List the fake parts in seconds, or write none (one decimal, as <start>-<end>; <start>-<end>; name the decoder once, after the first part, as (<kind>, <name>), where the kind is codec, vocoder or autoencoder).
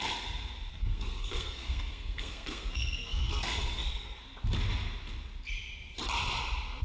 0.7-4.2 (codec, SNAC)